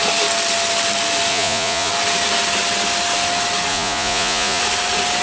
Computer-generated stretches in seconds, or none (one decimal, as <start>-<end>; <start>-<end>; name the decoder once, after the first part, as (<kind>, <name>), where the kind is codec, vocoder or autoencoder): 1.3-1.9 (vocoder, Vocos); 3.7-4.6